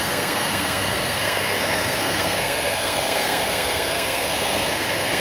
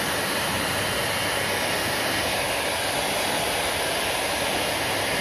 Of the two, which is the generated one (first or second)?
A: first